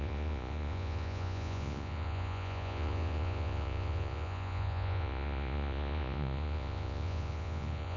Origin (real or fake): fake